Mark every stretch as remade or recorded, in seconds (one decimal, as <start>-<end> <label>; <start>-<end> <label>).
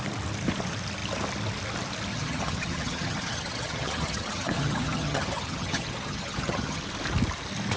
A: 0.0-2.1 recorded; 2.1-6.8 remade; 6.8-7.8 recorded